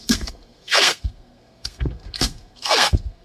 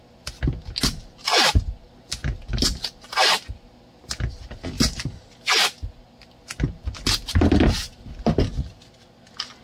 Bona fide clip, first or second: second